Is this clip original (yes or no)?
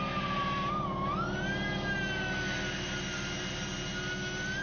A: yes